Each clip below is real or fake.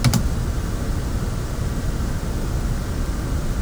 real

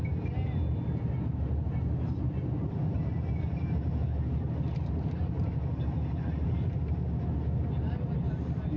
real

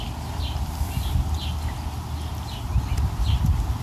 real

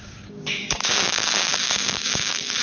fake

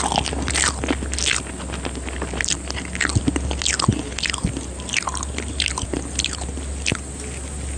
real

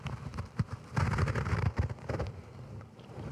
fake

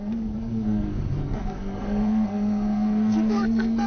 fake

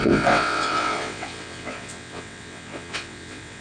fake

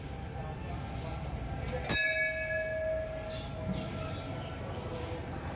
real